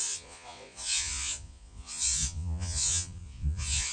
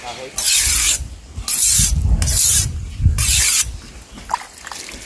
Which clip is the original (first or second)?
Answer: second